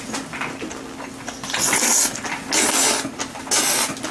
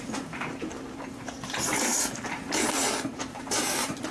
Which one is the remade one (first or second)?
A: second